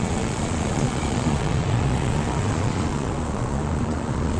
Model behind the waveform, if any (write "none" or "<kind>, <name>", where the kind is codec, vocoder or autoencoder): vocoder, Vocos